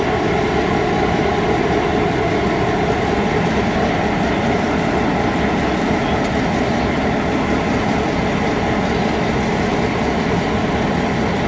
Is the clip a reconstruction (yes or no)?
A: no